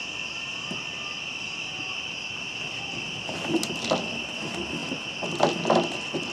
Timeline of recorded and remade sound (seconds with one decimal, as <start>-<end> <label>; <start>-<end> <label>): 0.0-6.3 recorded